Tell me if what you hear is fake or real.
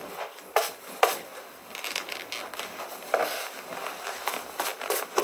real